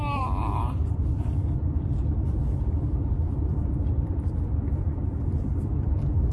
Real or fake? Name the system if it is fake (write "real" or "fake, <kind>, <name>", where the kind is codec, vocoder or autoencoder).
fake, vocoder, BigVGAN v2